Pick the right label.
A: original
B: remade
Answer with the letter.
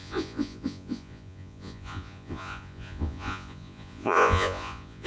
B